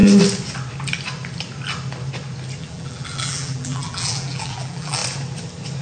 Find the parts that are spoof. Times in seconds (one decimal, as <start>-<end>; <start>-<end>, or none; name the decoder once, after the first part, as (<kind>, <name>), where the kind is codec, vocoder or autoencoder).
2.6-5.0 (vocoder, BigVGAN v2)

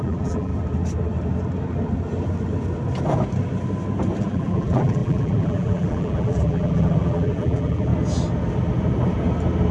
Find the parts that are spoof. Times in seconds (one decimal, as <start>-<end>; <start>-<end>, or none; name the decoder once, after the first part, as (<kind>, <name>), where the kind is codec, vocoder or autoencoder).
0.0-0.5 (vocoder, BigVGAN v2); 4.2-7.9

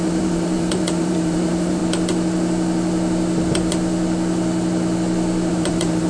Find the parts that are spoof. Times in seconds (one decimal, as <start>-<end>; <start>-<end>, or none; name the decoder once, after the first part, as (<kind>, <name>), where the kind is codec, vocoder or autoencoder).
0.0-1.8 (vocoder, BigVGAN v2); 5.5-6.1

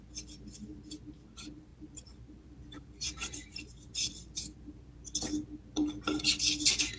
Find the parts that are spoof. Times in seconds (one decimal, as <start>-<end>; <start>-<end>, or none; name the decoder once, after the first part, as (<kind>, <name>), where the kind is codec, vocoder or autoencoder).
1.7-4.9 (vocoder, BigVGAN v2)

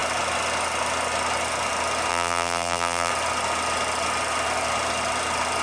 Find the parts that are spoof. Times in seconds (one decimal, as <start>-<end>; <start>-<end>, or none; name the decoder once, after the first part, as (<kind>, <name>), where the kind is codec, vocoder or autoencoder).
2.1-3.1 (vocoder, BigVGAN v2)